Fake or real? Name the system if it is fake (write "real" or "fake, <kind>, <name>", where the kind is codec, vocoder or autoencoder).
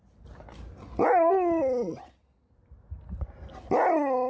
real